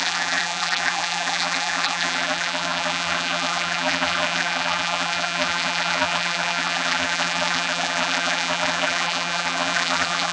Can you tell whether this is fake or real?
fake